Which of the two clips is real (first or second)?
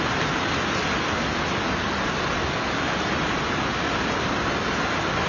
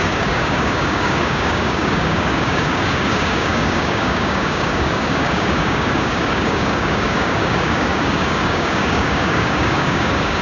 first